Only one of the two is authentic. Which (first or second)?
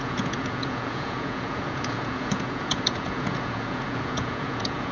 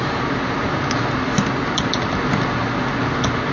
second